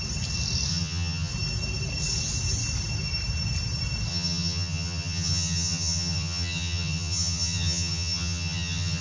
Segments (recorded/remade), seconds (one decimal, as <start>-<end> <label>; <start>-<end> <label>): 0.0-0.7 recorded; 0.7-1.3 remade; 1.3-4.1 recorded; 4.1-9.0 remade